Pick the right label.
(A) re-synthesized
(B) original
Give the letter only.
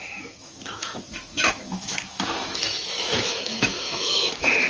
A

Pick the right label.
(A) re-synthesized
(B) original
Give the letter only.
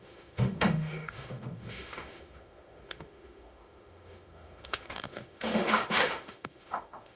A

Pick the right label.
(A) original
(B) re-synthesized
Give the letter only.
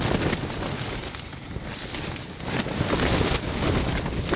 A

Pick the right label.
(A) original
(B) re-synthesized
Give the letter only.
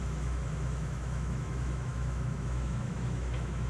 B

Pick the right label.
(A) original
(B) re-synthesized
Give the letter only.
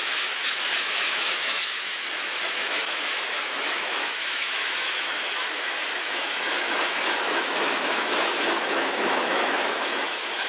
B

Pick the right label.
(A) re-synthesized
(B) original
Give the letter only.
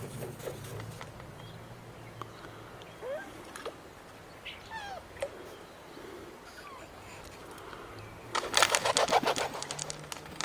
B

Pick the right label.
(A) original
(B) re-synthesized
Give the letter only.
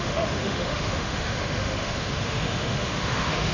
B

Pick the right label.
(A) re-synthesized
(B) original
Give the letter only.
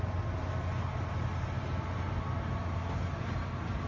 B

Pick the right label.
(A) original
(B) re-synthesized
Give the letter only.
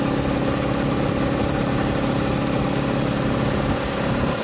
A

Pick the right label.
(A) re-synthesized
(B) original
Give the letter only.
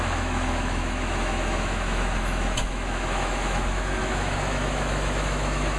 A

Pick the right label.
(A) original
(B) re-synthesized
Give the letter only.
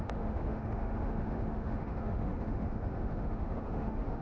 B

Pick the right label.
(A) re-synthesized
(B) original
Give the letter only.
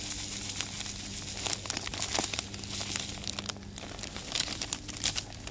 B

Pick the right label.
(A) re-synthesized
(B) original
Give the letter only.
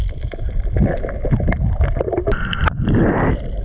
B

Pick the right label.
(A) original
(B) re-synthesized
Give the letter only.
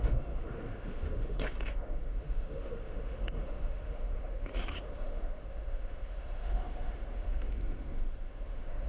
B